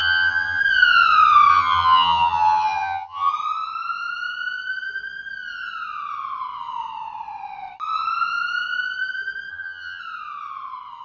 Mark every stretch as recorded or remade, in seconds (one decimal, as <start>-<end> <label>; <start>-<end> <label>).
0.0-0.6 remade; 0.6-1.5 recorded; 1.5-3.3 remade; 3.3-9.5 recorded; 9.5-10.0 remade; 10.0-11.0 recorded